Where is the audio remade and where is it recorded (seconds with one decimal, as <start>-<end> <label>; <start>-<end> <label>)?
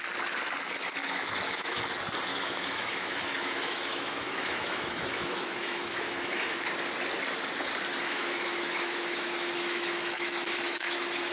0.0-1.0 recorded; 1.0-1.8 remade; 1.8-2.3 recorded; 2.3-6.5 remade; 6.5-7.9 recorded; 7.9-11.3 remade